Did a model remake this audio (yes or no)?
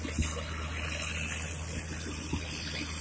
no